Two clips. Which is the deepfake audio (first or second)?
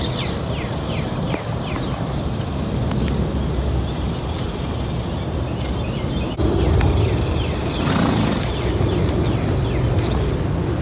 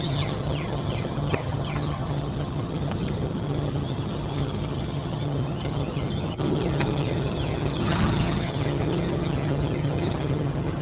second